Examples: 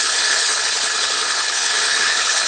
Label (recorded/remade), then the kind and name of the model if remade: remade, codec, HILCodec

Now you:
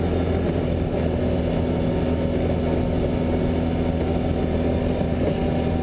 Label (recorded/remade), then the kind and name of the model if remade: recorded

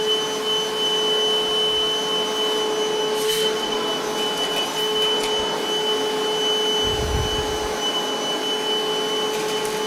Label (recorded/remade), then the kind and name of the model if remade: recorded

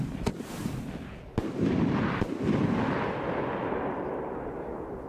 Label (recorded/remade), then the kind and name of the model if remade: recorded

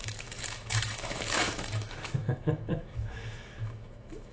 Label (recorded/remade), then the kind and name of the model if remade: remade, autoencoder, DAC-VAE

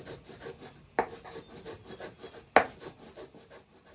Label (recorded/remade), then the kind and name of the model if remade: recorded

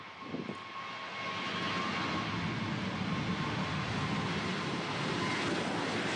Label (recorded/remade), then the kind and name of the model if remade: recorded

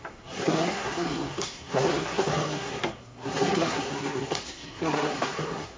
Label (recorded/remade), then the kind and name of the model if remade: remade, codec, SNAC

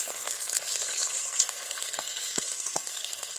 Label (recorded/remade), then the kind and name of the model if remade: remade, codec, SNAC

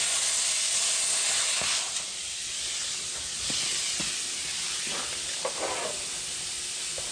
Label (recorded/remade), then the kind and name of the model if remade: recorded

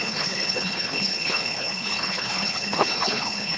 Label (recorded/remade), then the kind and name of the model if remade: remade, codec, HILCodec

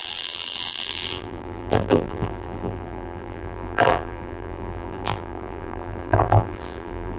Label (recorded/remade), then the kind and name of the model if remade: remade, vocoder, BigVGAN v2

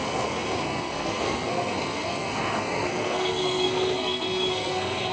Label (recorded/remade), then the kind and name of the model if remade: remade, codec, SNAC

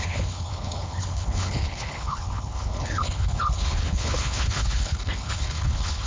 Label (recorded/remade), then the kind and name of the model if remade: remade, codec, HILCodec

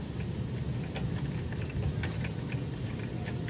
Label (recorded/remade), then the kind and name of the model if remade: recorded